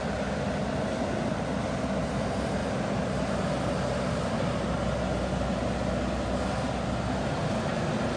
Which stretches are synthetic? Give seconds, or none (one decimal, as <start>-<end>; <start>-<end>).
none